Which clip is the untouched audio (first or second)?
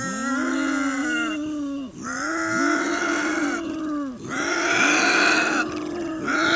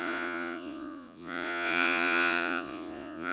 first